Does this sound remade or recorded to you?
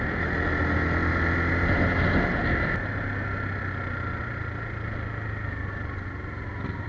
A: recorded